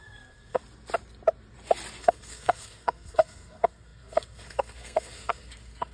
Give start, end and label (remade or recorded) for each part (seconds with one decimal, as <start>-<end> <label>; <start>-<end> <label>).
0.0-0.6 remade; 0.6-2.0 recorded; 2.0-5.9 remade